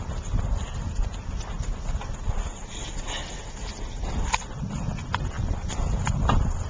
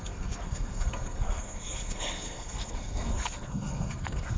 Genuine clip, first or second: first